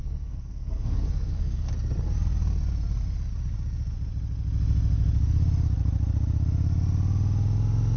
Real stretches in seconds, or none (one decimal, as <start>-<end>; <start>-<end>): 1.7-8.0